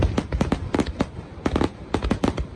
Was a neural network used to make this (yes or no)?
no